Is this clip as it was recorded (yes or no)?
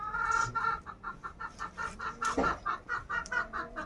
yes